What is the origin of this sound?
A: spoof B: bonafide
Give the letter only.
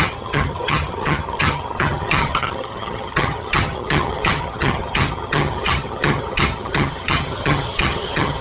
A